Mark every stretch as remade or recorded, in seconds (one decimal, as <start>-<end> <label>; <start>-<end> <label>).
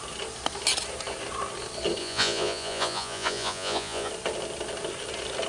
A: 0.0-2.0 recorded; 2.0-4.1 remade; 4.1-5.5 recorded